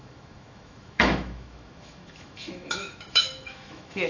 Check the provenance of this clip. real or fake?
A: fake